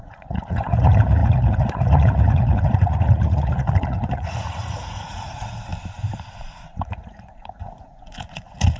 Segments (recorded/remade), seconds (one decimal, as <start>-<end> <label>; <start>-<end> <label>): 0.0-5.7 remade; 5.7-6.3 recorded; 6.3-8.8 remade